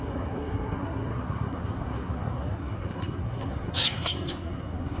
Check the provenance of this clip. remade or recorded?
remade